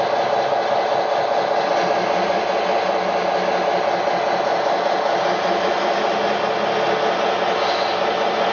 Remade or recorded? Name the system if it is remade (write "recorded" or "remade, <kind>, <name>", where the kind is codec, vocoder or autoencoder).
recorded